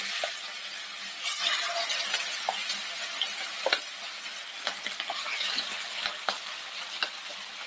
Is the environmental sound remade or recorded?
recorded